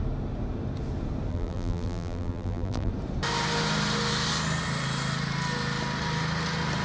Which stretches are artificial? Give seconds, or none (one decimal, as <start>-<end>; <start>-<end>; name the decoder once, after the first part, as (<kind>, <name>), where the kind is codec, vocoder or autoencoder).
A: 1.3-2.9 (vocoder, BigVGAN v2)